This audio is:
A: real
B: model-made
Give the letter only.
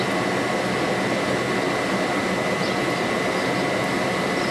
A